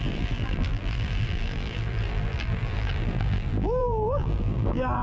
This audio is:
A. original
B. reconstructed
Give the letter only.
B